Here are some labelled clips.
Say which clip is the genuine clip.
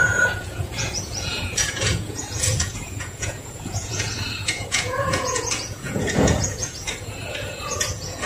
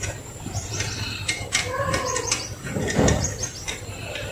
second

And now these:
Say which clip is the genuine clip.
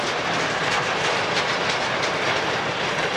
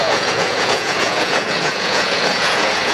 first